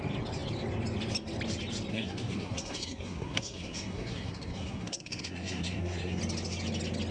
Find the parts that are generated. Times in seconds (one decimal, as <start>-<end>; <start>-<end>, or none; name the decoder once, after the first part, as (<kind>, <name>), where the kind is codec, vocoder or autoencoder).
1.9-6.2 (codec, SNAC)

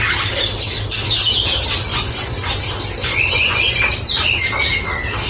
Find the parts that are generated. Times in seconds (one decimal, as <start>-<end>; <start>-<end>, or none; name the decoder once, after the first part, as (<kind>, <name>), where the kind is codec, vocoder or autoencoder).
1.9-2.5 (vocoder, Vocos); 3.0-3.8

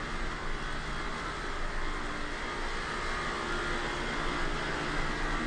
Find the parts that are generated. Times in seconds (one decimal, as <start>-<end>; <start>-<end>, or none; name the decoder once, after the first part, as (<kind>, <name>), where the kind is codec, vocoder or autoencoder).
none

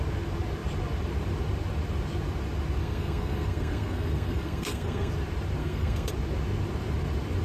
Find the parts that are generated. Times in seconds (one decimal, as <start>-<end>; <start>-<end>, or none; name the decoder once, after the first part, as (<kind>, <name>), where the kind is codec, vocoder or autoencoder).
2.8-5.1 (codec, SNAC); 5.6-6.1

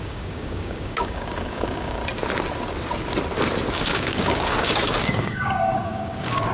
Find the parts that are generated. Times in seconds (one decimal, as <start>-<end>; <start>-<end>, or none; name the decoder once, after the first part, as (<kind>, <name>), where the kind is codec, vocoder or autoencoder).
0.0-2.0 (codec, DAC); 3.7-6.5

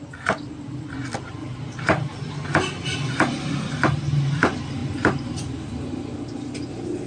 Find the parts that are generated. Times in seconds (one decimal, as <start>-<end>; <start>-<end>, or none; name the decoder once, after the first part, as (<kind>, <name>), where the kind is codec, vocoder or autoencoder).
none

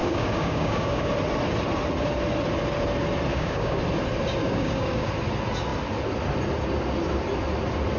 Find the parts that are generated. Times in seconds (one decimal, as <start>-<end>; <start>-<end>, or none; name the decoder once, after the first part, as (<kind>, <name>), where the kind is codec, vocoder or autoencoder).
0.0-1.1 (codec, DAC); 3.3-3.8; 4.4-5.1